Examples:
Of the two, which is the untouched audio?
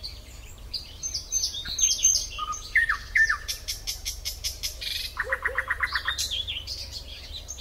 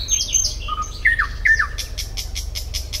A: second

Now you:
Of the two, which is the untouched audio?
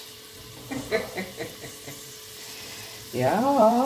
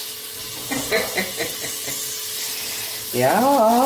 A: second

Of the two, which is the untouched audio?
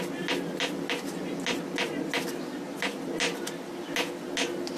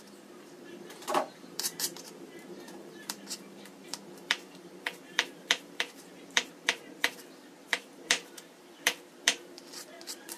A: first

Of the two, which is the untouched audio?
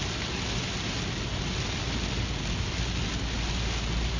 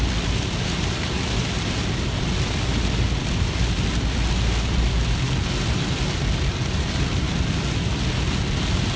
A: first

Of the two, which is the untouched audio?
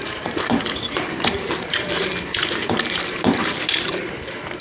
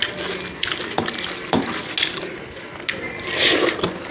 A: second